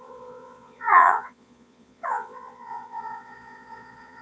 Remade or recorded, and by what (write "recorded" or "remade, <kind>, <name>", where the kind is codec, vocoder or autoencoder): remade, vocoder, Vocos